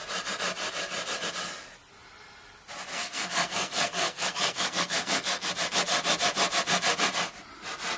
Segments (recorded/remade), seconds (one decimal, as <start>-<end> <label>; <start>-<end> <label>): 0.0-2.9 recorded; 2.9-5.5 remade; 5.5-8.0 recorded